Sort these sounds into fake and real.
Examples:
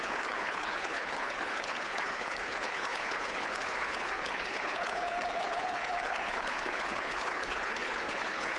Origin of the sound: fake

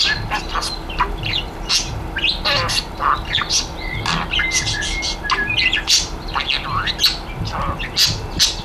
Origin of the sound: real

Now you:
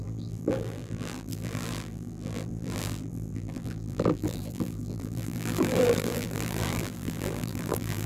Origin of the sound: fake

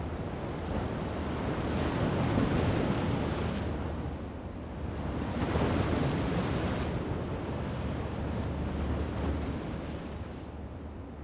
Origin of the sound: real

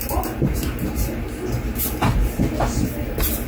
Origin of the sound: real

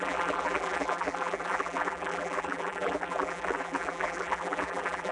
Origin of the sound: fake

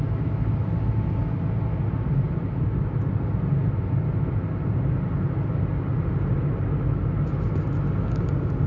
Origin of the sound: real